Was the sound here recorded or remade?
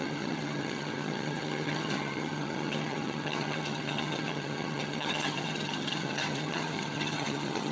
remade